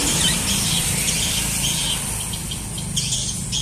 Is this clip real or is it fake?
real